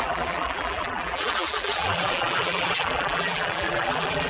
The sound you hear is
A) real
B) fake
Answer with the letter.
B